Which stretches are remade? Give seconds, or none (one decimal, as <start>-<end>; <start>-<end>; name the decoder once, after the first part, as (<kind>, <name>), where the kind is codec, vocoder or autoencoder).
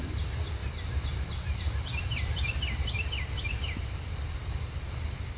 none